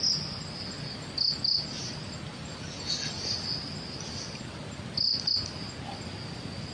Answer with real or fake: real